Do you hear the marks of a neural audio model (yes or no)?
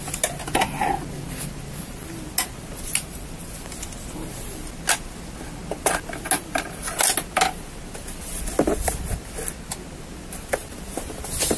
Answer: no